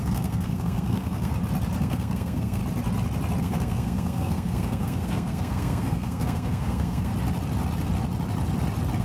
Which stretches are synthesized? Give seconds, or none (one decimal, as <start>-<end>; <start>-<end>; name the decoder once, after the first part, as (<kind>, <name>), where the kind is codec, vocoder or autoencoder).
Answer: 0.0-1.3 (codec, SNAC); 1.8-2.6; 3.4-7.1